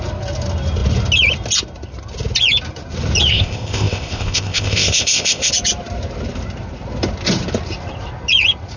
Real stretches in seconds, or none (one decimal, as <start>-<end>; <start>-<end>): 0.0-3.3; 5.5-8.8